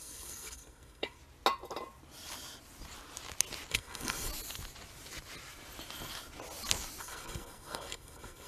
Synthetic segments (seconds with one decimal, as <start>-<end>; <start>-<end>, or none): 0.0-1.2; 3.7-4.3; 7.0-8.5